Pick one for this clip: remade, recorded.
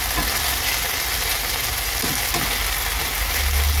recorded